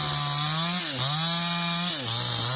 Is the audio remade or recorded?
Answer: recorded